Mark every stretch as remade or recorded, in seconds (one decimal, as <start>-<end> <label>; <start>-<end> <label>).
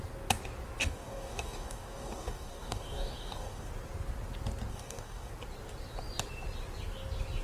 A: 0.0-0.8 recorded; 0.8-3.7 remade; 3.7-4.7 recorded; 4.7-5.3 remade; 5.3-7.4 recorded